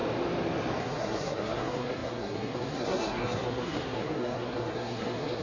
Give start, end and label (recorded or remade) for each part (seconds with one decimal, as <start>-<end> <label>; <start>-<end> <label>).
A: 0.0-0.8 recorded; 0.8-5.4 remade